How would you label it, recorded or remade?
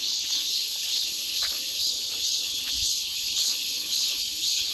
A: remade